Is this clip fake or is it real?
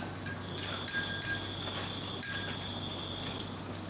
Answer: real